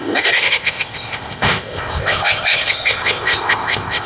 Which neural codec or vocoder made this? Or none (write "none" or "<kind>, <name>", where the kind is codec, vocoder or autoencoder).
codec, ZipCodec